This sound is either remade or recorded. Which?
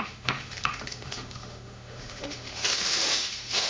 remade